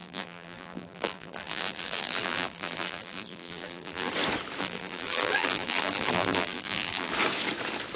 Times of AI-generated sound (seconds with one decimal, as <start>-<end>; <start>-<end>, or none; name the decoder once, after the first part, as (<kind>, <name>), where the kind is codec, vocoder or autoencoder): 0.0-4.1 (vocoder, BigVGAN v2); 4.6-7.1